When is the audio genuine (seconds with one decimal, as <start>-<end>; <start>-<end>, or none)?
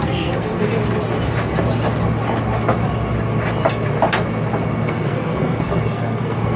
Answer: 0.8-4.8